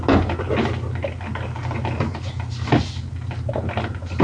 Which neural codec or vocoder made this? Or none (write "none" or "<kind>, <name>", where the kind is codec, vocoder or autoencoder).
none